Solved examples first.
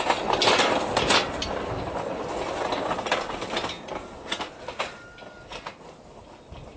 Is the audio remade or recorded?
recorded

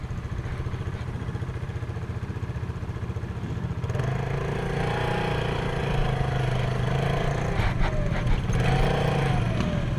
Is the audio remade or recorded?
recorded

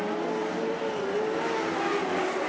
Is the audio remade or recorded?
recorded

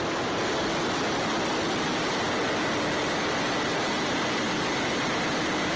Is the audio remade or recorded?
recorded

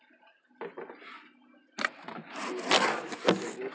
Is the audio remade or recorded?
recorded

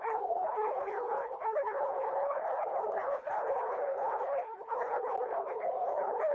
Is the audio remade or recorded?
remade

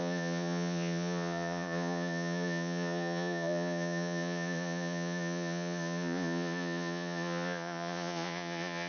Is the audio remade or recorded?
remade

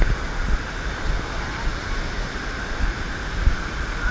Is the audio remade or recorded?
recorded